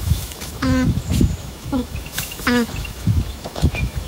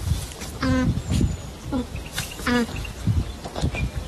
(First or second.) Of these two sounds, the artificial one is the first